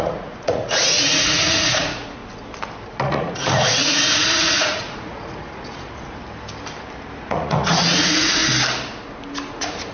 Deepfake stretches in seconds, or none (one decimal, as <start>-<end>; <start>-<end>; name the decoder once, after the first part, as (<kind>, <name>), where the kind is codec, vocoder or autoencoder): 0.0-2.2 (vocoder, Vocos); 2.9-6.2; 7.2-8.4; 9.5-9.9